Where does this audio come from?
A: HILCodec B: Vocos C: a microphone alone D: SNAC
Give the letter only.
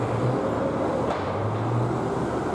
C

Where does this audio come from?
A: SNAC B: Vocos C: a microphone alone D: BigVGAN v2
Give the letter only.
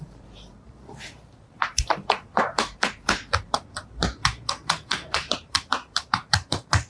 D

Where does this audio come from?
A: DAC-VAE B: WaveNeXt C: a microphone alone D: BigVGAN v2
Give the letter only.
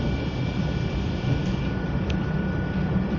C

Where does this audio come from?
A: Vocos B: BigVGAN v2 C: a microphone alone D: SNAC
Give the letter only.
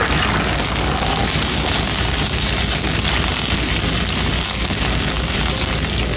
C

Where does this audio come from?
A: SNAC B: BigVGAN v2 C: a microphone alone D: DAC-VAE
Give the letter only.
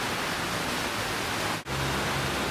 C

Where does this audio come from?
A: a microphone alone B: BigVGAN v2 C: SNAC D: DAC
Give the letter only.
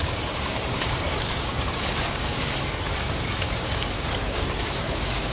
D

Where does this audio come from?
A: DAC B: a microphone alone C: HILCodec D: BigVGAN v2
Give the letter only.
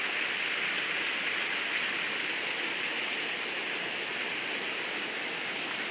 B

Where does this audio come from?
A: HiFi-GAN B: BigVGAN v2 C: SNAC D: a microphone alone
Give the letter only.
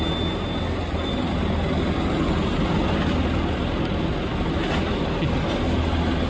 D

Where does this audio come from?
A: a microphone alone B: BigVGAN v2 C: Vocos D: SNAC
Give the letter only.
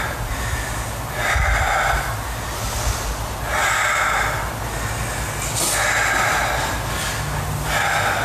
A